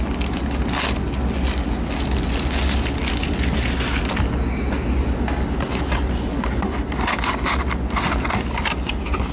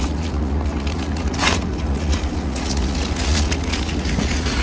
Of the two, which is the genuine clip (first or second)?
first